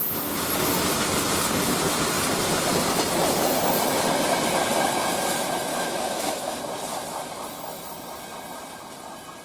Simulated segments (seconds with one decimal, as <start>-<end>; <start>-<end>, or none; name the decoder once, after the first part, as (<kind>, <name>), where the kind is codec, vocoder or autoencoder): 5.7-6.6 (autoencoder, DAC-VAE)